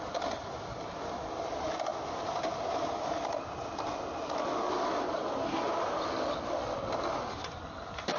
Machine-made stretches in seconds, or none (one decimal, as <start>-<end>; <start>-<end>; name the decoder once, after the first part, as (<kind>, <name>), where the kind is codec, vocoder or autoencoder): none